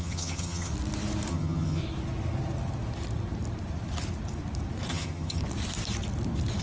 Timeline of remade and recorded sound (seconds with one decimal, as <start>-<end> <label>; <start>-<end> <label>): 0.0-0.7 remade; 0.7-1.3 recorded; 1.3-1.8 remade; 1.8-4.9 recorded; 4.9-5.4 remade; 5.4-6.6 recorded